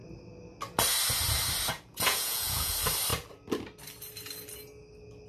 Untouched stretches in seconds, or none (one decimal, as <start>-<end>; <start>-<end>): 0.0-1.9; 2.7-5.3